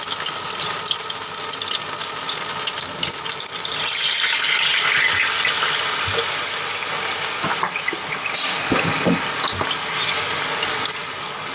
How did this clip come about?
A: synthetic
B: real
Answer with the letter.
B